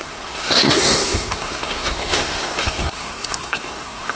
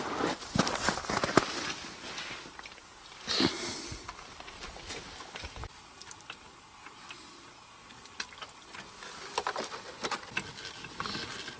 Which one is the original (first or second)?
second